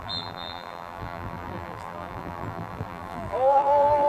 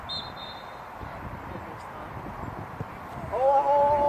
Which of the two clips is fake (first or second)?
first